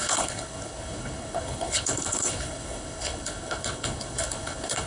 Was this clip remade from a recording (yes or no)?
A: yes